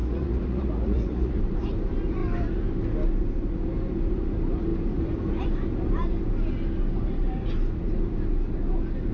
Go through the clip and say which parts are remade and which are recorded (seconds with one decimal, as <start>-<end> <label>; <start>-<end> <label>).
0.0-1.4 remade; 1.4-9.1 recorded